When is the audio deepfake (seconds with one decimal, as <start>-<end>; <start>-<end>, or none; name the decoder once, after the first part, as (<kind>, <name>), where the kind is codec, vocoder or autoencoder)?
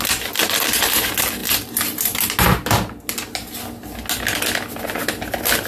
none